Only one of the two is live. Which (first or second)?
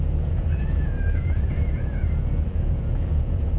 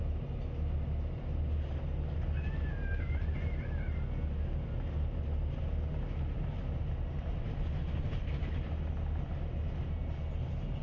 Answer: second